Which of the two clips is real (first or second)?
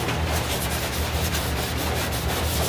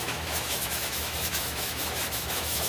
first